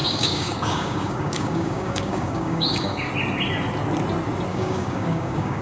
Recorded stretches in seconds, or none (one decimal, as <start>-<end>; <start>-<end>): 3.1-4.5